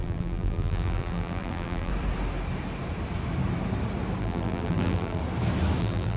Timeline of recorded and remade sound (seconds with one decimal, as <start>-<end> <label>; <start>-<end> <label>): 0.0-1.9 remade; 1.9-4.2 recorded; 4.2-5.2 remade; 5.2-5.8 recorded; 5.8-6.2 remade